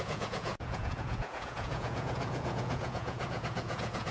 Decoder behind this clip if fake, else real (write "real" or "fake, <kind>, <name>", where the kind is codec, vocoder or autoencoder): fake, vocoder, Vocos